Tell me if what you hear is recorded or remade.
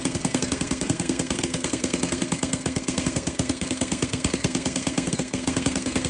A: remade